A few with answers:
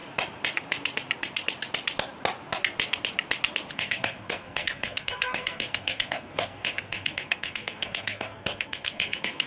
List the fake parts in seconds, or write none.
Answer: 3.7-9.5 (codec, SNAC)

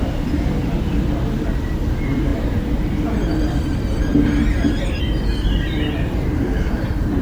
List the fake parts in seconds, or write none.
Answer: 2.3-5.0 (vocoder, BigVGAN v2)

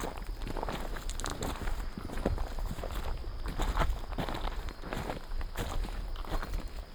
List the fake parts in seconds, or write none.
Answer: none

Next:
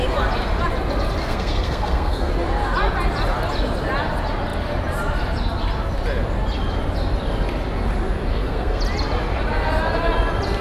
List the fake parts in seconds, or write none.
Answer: 1.2-2.3 (codec, SNAC); 8.3-8.8

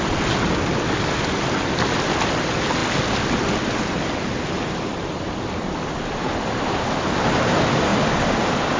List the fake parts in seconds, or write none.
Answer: none